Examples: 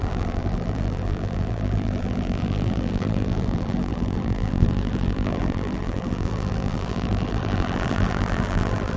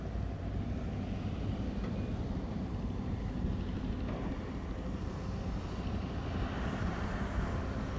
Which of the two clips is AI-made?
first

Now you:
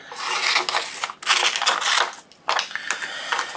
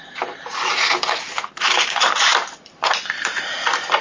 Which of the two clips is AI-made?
second